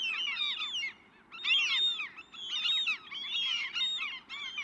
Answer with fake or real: real